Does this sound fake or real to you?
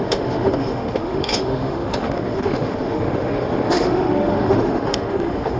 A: fake